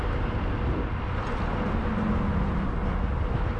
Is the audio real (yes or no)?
yes